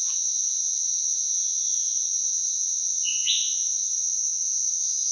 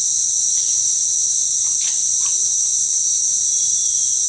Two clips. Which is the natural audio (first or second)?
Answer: second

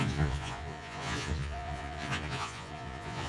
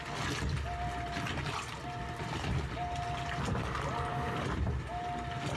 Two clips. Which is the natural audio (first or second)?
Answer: second